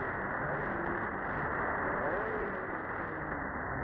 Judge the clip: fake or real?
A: real